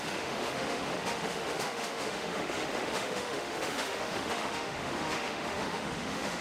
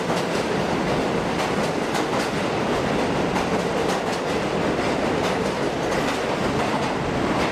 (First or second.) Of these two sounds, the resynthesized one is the first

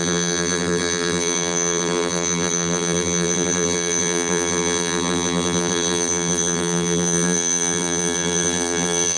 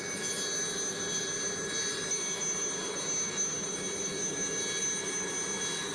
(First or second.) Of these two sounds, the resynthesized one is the first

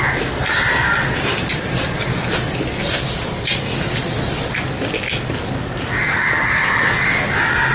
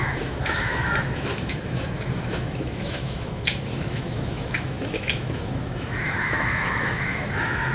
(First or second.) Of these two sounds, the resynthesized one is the second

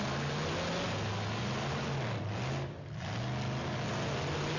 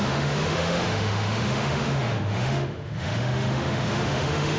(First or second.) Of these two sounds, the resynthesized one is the second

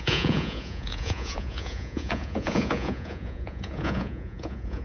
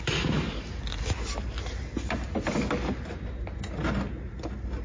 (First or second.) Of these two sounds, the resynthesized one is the first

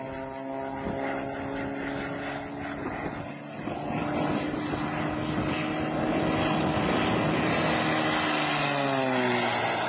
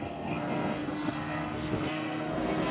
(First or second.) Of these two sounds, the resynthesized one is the second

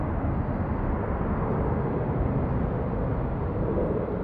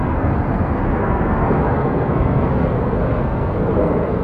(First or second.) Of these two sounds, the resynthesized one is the second